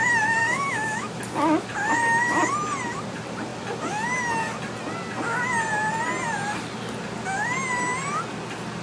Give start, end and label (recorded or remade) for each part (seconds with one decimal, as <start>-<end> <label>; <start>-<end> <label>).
0.0-0.4 recorded; 0.4-1.2 remade; 1.2-8.8 recorded